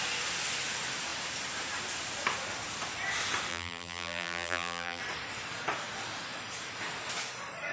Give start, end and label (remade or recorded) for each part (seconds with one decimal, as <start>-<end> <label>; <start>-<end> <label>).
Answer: 0.0-3.5 recorded; 3.5-5.0 remade; 5.0-7.7 recorded